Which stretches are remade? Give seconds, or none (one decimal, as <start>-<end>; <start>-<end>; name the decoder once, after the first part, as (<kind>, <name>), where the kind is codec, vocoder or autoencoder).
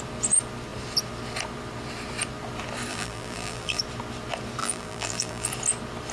2.9-3.8 (vocoder, BigVGAN v2); 4.6-5.5